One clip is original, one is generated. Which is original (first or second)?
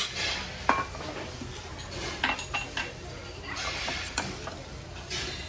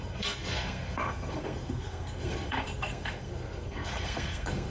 first